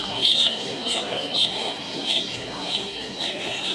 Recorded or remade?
remade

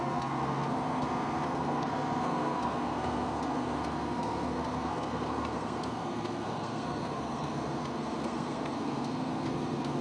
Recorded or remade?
remade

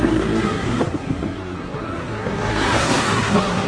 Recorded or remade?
remade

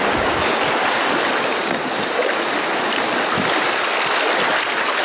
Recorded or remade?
recorded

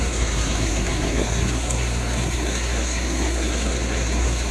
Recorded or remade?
remade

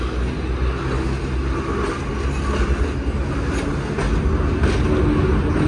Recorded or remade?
recorded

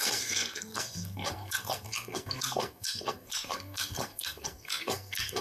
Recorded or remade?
remade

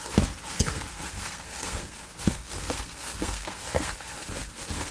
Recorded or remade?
remade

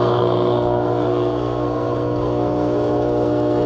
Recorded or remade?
remade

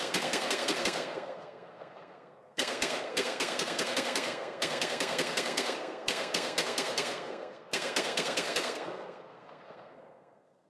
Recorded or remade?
remade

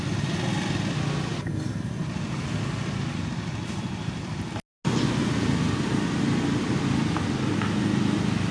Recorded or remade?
recorded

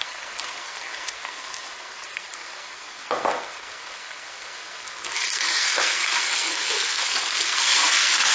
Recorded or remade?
remade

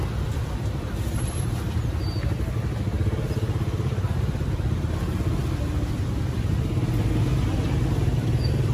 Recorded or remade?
recorded